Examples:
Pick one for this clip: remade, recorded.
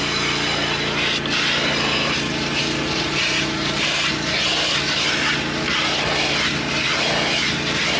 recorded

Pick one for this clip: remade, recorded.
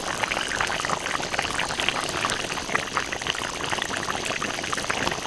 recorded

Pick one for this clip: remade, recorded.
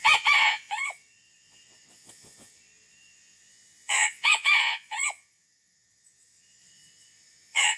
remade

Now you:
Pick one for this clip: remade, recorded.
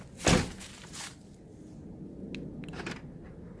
recorded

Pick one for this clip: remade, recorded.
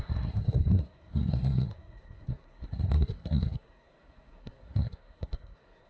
remade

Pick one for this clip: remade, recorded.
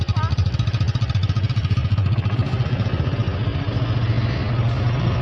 recorded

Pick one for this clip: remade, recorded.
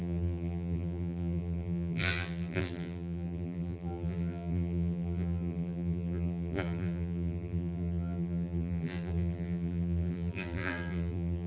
remade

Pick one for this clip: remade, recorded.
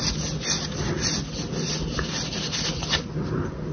recorded